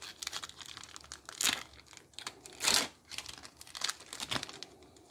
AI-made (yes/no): no